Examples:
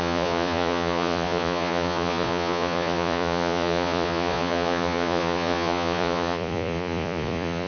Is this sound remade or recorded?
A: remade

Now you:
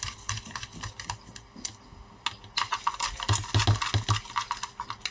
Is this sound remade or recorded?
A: recorded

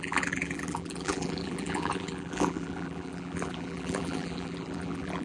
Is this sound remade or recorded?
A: remade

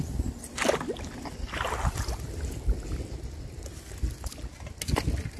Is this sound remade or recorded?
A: recorded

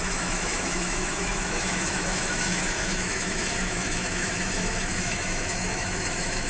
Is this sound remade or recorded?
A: remade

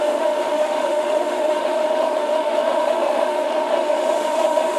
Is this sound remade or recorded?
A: remade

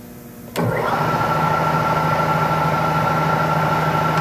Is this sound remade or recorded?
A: recorded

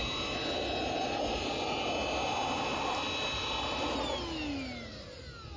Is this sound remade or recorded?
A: recorded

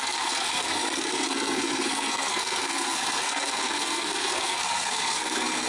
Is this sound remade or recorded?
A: remade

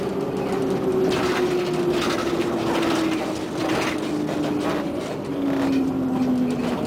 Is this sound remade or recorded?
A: recorded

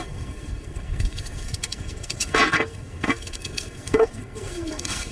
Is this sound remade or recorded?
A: remade